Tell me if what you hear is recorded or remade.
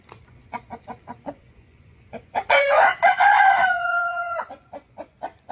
remade